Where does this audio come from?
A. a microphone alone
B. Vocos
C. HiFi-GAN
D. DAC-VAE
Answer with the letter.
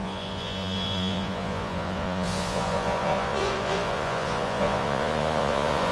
B